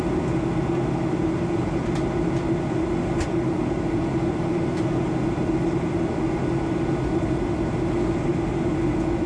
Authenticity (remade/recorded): recorded